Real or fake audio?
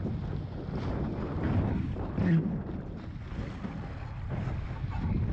real